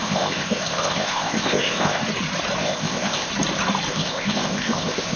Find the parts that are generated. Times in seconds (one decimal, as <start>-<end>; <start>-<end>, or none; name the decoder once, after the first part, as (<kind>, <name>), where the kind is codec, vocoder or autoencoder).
0.0-2.0 (codec, ZipCodec); 2.6-3.3; 3.9-5.2